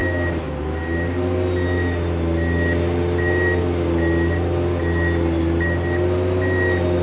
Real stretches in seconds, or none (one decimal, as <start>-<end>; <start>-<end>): 0.0-7.0